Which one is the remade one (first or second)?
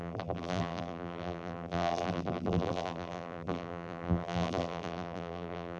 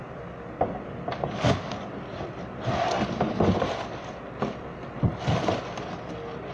first